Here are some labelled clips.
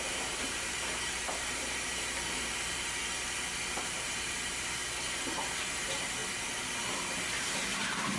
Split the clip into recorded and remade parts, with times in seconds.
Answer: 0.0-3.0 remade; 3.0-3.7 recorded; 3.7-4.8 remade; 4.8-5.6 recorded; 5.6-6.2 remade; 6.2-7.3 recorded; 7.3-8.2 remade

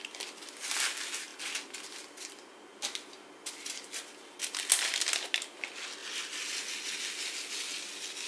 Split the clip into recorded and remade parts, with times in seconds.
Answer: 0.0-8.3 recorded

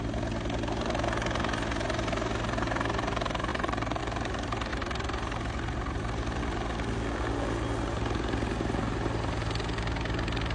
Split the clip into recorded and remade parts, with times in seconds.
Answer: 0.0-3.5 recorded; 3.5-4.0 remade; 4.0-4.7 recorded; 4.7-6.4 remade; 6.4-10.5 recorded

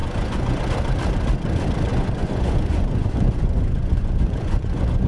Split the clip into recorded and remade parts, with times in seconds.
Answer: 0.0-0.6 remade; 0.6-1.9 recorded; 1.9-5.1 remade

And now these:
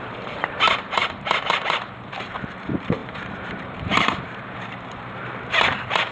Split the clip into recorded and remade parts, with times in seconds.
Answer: 0.0-6.1 remade